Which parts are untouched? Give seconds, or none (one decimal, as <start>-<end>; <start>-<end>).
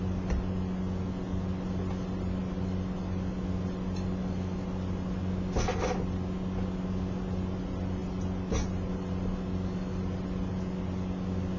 0.0-11.6